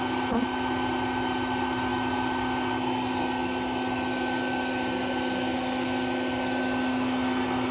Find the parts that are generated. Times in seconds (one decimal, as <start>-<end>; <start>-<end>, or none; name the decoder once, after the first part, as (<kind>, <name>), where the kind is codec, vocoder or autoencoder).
none